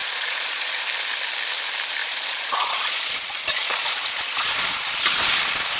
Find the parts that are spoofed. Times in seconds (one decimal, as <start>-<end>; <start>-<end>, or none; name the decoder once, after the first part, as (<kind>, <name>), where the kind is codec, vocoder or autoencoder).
0.0-0.8 (vocoder, Vocos); 2.0-5.8